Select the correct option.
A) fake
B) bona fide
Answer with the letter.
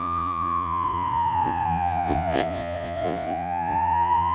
A